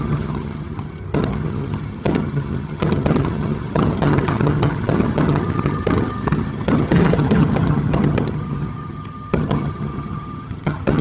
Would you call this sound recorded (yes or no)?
no